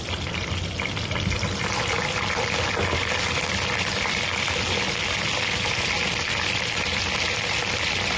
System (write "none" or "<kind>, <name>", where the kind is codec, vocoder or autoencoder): none